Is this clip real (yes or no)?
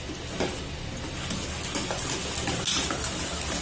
yes